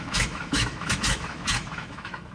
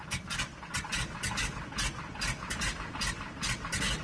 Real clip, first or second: second